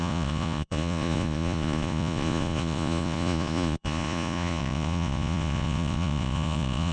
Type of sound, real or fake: fake